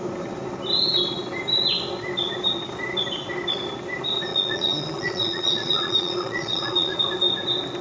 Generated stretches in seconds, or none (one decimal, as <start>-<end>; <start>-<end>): 4.3-7.0